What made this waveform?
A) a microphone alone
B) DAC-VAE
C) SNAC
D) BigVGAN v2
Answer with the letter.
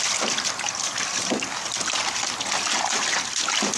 A